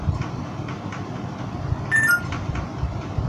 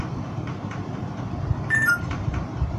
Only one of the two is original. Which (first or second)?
first